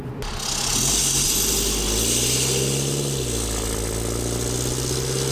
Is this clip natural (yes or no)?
yes